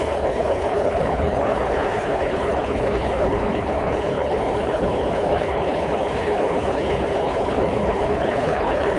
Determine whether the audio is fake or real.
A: fake